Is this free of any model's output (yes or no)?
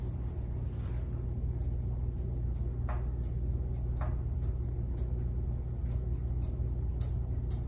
yes